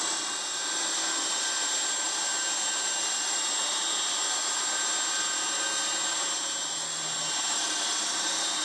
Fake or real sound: real